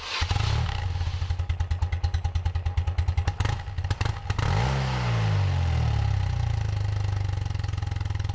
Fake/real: real